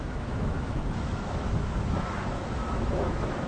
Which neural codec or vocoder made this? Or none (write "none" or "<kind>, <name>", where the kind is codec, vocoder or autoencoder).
autoencoder, DAC-VAE